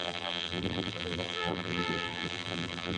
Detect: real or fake fake